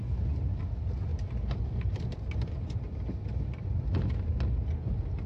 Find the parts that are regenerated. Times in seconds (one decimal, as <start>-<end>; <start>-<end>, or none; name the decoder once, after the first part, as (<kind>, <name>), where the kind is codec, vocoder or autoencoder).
1.1-2.8 (vocoder, BigVGAN v2)